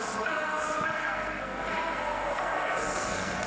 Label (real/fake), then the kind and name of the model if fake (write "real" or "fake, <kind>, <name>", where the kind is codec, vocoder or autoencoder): fake, codec, SNAC